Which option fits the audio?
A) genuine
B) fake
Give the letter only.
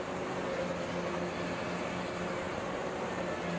A